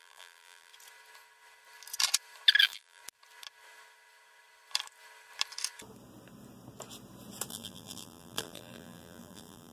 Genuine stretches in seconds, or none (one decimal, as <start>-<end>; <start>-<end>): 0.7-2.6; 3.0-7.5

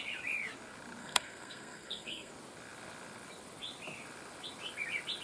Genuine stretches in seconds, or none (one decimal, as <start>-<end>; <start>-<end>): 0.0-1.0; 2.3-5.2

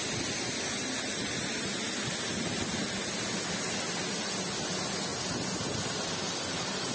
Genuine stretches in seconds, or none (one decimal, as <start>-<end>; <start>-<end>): 0.0-6.9